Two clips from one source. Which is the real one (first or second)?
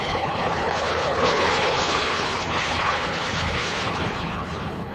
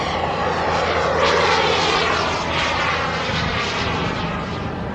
second